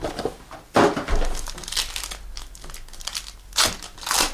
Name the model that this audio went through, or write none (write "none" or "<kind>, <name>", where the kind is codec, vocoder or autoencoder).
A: none